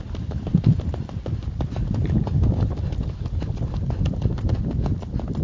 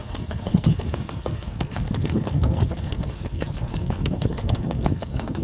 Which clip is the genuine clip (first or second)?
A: first